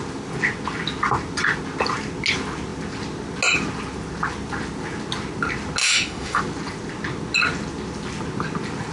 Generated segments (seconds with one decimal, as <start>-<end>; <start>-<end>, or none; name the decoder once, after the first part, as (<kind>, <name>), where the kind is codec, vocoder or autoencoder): 5.8-6.4 (autoencoder, DAC-VAE)